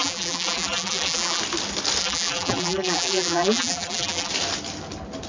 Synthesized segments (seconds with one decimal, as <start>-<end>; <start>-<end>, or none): 0.0-1.4; 2.0-4.3